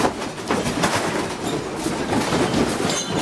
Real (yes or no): yes